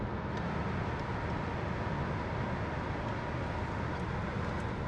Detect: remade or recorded recorded